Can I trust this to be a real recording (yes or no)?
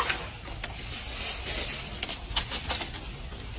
yes